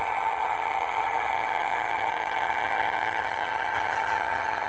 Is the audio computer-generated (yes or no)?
yes